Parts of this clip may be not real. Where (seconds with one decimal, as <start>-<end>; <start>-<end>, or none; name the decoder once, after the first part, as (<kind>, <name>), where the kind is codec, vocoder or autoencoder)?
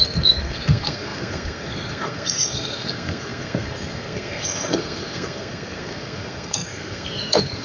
0.0-7.6 (codec, SNAC)